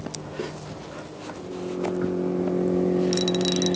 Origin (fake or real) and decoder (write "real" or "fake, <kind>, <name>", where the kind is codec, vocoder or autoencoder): real